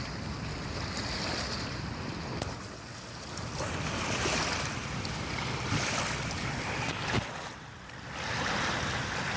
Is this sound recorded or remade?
recorded